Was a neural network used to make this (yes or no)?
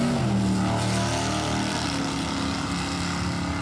no